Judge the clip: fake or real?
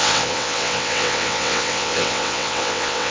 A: fake